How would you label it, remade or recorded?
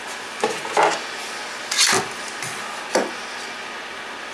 recorded